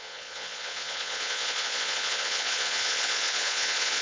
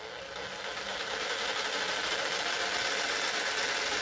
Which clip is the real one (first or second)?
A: second